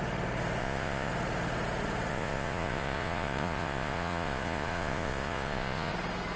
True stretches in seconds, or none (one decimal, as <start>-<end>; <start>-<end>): 0.0-0.6; 1.1-2.1; 5.9-6.4